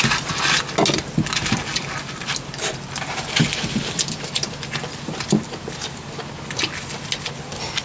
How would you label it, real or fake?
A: real